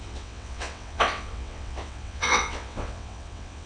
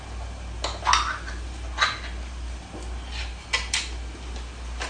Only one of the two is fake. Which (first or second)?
first